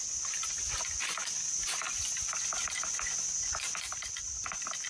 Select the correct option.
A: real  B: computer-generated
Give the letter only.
A